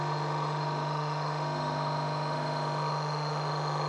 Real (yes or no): no